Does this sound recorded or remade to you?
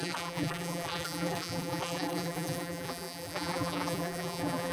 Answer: remade